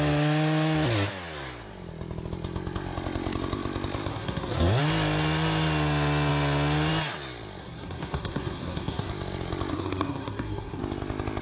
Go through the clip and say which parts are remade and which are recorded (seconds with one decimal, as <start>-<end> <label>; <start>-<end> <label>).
0.0-4.1 recorded; 4.1-4.8 remade; 4.8-7.6 recorded; 7.6-9.1 remade; 9.1-9.7 recorded; 9.7-10.8 remade; 10.8-11.4 recorded